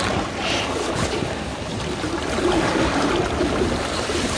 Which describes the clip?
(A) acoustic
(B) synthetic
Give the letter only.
A